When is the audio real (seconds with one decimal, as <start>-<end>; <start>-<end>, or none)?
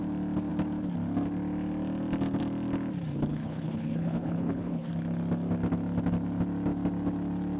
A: 0.0-3.3; 4.9-7.6